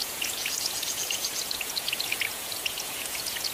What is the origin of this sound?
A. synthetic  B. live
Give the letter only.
A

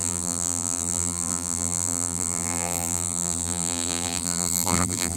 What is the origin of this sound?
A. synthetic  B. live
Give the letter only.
A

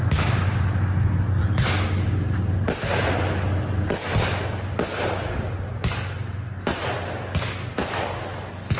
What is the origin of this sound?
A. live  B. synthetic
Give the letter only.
A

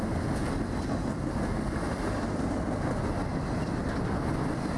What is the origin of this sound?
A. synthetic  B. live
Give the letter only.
B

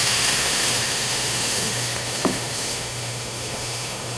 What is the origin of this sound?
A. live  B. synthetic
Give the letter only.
B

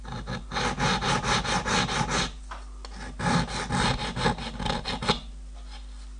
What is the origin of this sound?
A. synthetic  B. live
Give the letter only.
B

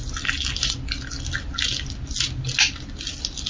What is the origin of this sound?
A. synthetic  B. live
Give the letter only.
B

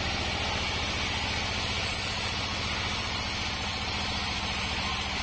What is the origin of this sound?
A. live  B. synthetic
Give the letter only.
A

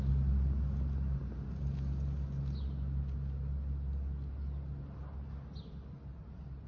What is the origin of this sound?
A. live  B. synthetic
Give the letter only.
A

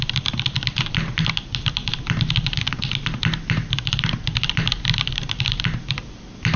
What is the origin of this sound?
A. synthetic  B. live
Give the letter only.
B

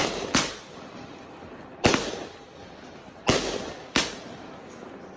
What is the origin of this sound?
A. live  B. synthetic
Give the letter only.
A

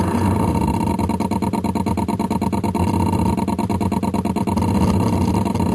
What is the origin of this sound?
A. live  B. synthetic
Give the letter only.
A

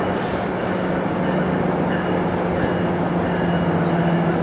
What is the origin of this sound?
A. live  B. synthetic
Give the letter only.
A